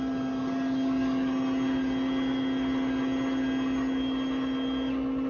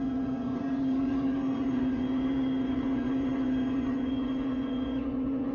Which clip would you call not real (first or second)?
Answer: second